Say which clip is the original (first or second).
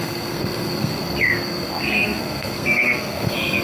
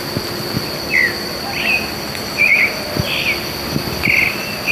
second